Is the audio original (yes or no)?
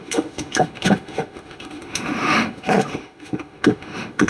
no